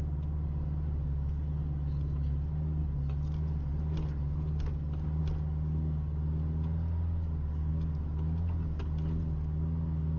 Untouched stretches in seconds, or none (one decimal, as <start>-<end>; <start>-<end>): 0.0-10.2